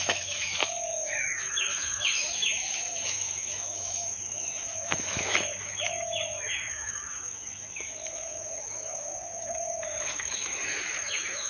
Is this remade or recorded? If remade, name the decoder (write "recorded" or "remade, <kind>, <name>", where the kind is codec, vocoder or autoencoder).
remade, autoencoder, DAC-VAE